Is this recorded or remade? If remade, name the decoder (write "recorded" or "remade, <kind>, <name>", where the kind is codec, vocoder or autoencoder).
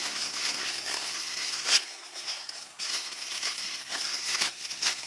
remade, codec, SNAC